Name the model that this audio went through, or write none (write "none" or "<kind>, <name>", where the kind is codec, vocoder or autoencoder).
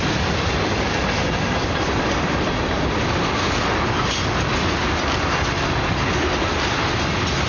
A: none